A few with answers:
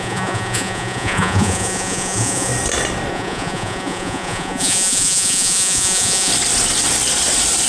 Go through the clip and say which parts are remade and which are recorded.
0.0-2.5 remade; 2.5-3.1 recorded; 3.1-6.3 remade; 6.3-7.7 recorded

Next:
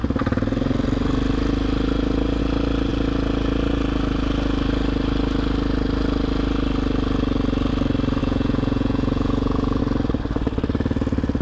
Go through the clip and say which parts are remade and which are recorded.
0.0-8.2 recorded; 8.2-9.8 remade; 9.8-11.4 recorded

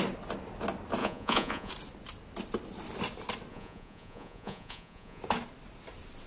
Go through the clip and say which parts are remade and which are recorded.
0.0-1.0 recorded; 1.0-1.7 remade; 1.7-3.5 recorded; 3.5-5.2 remade; 5.2-6.3 recorded

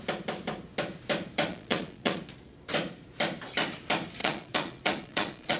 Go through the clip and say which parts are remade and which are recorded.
0.0-1.5 recorded; 1.5-2.2 remade; 2.2-4.2 recorded; 4.2-5.6 remade

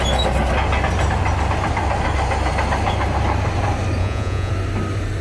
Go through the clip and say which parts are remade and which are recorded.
0.0-4.0 recorded; 4.0-4.5 remade; 4.5-5.2 recorded

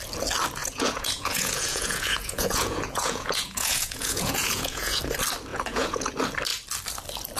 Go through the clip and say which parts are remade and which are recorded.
0.0-0.6 recorded; 0.6-5.0 remade; 5.0-5.5 recorded; 5.5-6.1 remade; 6.1-7.4 recorded